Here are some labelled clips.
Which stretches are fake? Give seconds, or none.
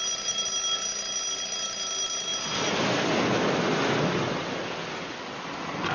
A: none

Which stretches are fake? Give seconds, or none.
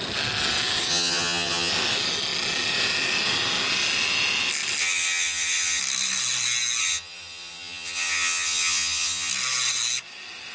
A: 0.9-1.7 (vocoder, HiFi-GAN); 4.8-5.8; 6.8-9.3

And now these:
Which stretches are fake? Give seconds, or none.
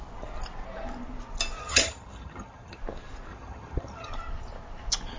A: 1.6-2.8 (vocoder, HiFi-GAN); 3.3-4.1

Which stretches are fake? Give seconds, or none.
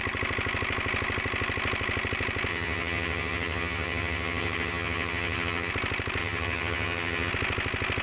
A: 2.5-5.7 (vocoder, HiFi-GAN); 6.2-7.3